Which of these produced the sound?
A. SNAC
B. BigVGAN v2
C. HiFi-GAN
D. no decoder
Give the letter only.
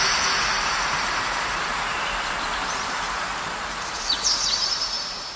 B